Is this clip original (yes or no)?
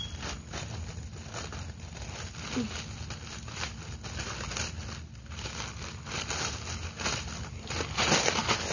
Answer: yes